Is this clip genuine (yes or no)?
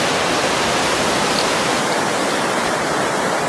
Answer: yes